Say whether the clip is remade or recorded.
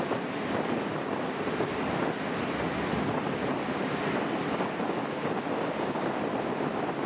recorded